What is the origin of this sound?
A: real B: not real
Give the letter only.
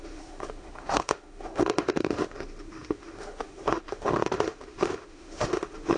B